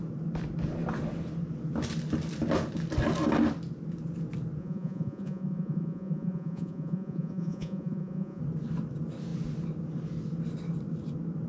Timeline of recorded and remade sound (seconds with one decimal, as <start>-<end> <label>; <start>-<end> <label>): 0.0-4.6 recorded; 4.6-8.4 remade; 8.4-11.5 recorded